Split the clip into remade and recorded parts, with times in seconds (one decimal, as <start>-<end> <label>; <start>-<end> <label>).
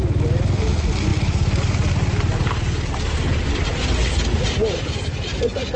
0.0-5.8 recorded